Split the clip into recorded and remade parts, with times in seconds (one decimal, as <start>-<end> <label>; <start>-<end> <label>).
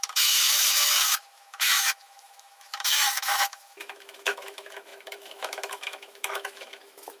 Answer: 0.0-7.2 remade